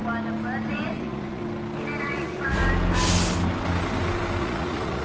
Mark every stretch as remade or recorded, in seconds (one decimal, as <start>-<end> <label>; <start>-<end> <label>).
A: 0.0-0.7 recorded; 0.7-1.4 remade; 1.4-2.0 recorded; 2.0-2.6 remade; 2.6-4.4 recorded; 4.4-5.0 remade